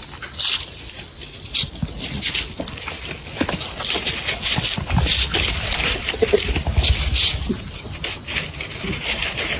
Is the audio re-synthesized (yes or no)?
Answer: no